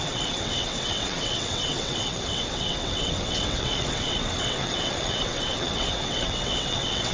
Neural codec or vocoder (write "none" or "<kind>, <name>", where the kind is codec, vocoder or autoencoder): vocoder, WaveNeXt